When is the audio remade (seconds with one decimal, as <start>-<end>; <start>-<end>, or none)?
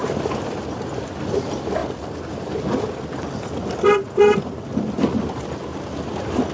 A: none